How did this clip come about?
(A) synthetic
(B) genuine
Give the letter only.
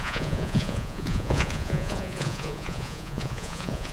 A